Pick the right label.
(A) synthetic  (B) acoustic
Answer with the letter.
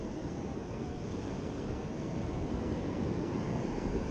A